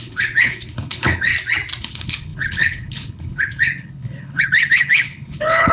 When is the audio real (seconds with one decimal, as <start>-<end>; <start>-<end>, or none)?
1.3-1.8

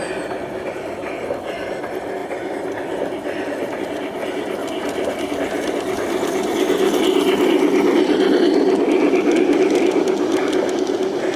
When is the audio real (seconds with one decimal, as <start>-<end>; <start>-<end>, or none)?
0.0-4.6; 5.3-11.4

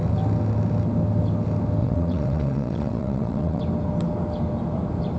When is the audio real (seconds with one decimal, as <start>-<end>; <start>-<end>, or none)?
0.0-1.8; 3.6-5.2

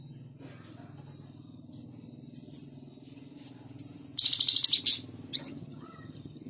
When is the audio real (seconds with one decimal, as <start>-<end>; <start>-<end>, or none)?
0.0-5.3

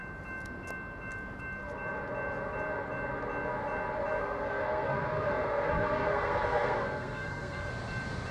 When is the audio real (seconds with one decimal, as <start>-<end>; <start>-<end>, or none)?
0.0-4.2; 7.7-8.3